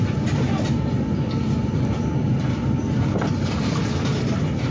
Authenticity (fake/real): real